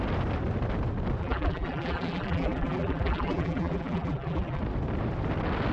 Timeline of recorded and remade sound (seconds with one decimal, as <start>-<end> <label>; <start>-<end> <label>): 0.0-1.2 recorded; 1.2-4.6 remade; 4.6-5.7 recorded